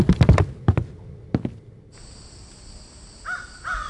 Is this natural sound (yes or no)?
yes